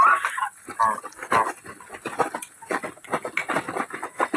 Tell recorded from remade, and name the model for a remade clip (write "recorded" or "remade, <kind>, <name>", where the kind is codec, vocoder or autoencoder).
recorded